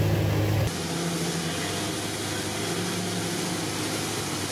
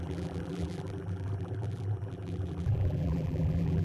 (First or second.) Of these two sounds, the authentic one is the first